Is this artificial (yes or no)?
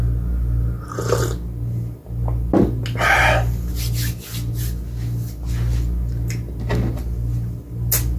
no